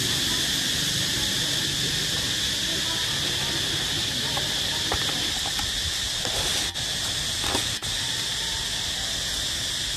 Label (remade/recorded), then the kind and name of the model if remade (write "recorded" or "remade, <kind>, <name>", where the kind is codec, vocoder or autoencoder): recorded